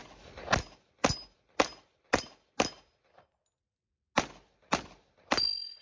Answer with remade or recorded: recorded